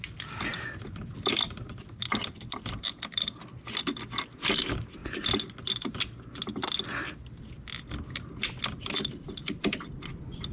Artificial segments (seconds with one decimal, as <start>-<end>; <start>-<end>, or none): none